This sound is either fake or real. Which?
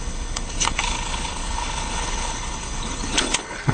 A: fake